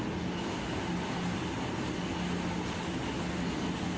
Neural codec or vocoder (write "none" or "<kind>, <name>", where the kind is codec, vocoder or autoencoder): none